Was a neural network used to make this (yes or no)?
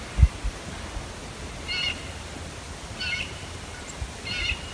no